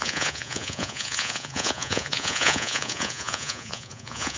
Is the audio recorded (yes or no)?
no